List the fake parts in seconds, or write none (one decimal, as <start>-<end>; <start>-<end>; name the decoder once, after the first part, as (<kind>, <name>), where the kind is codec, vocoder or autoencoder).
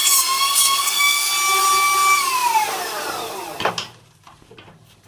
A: 0.0-1.3 (codec, SNAC)